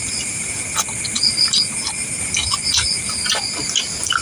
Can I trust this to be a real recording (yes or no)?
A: yes